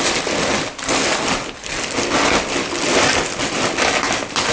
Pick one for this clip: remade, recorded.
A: recorded